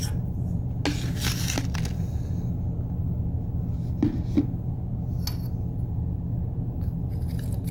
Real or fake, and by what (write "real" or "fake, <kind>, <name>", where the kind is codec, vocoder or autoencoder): real